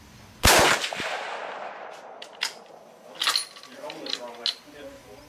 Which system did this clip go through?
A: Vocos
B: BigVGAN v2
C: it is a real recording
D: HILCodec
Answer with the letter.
C